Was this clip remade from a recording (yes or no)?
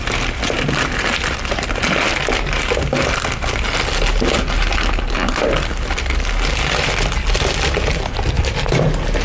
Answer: no